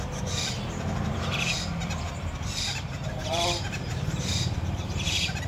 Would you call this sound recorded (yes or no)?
no